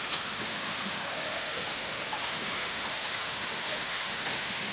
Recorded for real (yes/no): no